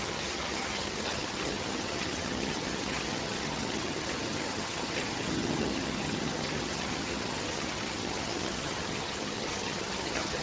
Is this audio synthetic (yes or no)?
yes